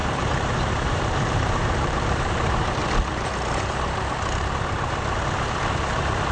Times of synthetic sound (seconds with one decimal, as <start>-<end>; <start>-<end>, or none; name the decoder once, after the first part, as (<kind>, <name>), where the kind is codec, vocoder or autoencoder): 0.0-2.8 (vocoder, BigVGAN v2); 5.8-6.3

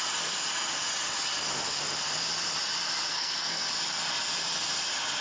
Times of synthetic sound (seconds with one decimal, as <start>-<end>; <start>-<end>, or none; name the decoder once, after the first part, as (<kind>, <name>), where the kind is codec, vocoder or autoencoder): 3.1-3.7 (codec, SNAC)

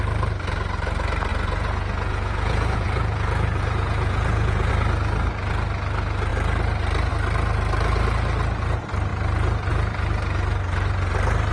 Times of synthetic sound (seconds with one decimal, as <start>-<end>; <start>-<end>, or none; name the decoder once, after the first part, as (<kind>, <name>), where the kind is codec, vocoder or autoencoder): 1.3-4.7 (vocoder, Vocos)